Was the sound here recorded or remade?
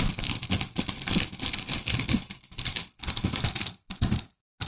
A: recorded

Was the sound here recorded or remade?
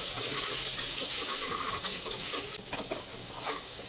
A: remade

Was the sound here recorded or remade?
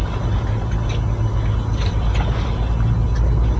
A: recorded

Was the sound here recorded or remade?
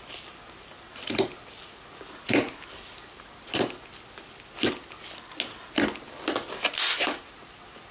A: recorded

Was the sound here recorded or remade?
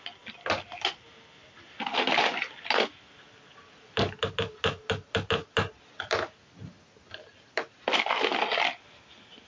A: recorded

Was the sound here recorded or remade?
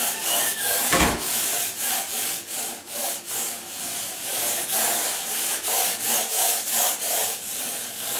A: remade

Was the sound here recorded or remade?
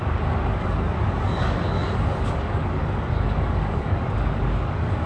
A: remade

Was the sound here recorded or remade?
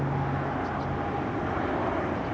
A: recorded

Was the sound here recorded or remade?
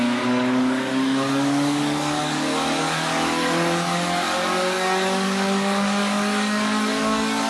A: remade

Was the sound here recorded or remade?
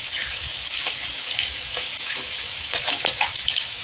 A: remade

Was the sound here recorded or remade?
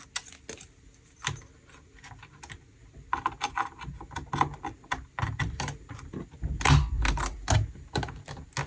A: recorded